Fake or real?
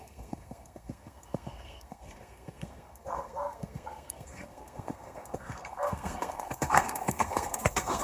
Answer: fake